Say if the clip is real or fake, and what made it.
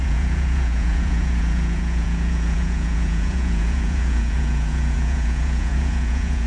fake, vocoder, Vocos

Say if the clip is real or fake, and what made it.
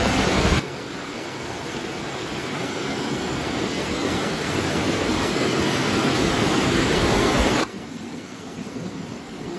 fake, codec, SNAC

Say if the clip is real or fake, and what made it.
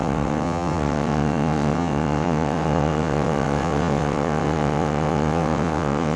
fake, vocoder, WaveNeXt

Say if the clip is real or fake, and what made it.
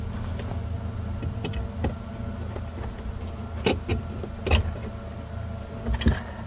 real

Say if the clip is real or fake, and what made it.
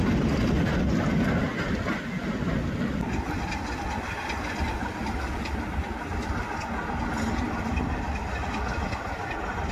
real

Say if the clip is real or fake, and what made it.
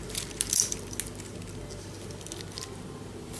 real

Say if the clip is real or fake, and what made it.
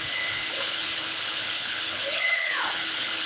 fake, codec, HILCodec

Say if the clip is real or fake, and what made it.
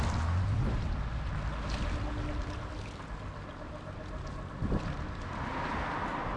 real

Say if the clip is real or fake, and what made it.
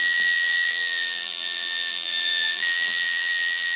fake, vocoder, BigVGAN v2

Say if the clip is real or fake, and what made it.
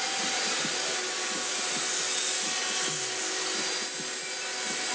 real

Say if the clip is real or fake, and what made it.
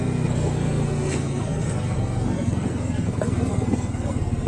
fake, codec, SNAC